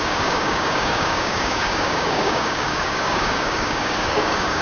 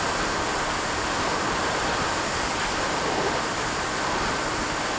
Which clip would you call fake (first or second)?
first